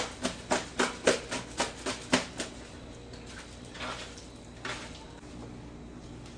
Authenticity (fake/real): real